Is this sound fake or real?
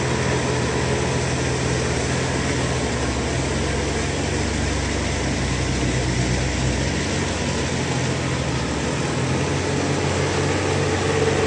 real